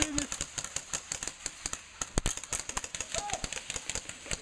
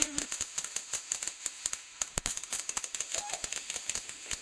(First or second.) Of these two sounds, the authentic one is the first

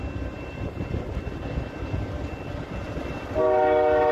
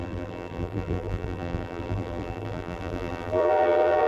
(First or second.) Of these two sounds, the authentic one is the first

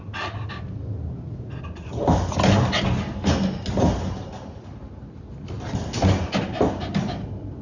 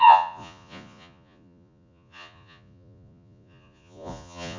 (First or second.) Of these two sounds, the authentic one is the first